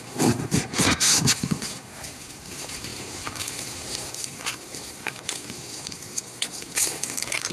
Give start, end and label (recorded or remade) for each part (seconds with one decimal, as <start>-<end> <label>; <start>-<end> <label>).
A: 0.0-7.5 remade